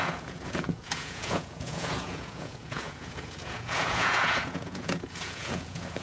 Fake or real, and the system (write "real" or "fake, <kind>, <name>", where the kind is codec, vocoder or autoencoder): fake, vocoder, Vocos